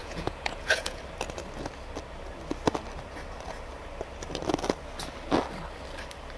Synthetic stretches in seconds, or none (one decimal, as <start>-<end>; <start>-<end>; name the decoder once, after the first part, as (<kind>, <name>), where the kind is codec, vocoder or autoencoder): 0.0-1.0 (vocoder, Vocos)